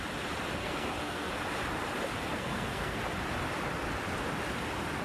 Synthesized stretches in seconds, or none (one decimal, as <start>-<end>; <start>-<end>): 0.6-1.3; 2.3-3.0